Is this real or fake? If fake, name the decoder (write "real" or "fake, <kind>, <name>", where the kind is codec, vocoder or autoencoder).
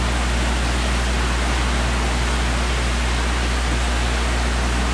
real